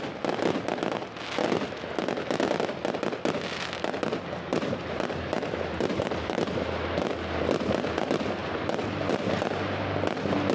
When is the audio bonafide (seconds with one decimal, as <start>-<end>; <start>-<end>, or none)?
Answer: 0.0-4.5; 7.1-8.4; 9.5-10.5